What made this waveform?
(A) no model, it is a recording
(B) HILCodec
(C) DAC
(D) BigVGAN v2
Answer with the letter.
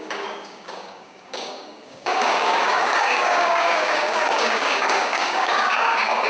C